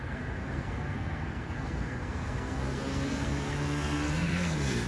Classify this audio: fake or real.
fake